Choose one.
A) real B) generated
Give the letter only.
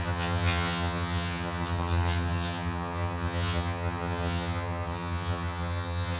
B